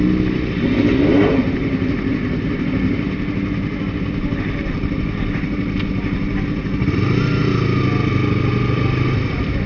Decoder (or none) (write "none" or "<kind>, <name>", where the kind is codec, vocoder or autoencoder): none